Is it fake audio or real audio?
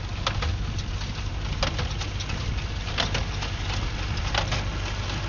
real